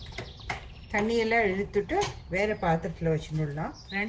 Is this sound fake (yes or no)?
no